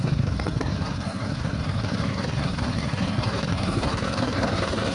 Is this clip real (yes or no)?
no